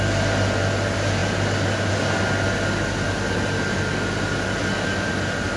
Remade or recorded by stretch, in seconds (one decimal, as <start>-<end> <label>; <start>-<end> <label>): 0.0-5.6 recorded